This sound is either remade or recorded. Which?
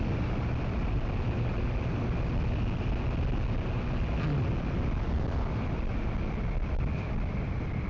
recorded